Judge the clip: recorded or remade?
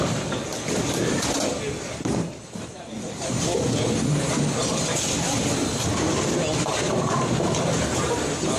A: remade